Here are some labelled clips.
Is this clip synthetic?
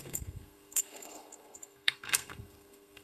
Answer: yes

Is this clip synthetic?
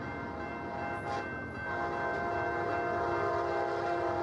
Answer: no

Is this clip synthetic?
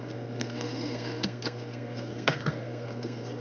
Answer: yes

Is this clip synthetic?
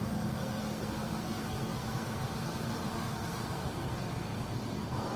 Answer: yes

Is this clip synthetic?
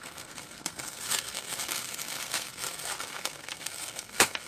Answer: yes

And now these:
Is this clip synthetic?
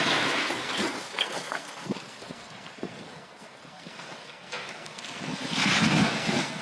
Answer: yes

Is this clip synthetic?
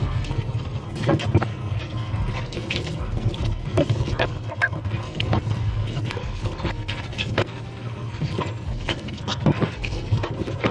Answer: yes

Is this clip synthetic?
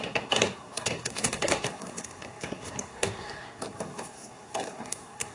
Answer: yes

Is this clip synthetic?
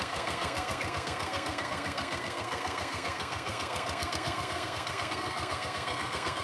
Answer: yes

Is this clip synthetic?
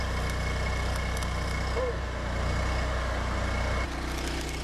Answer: no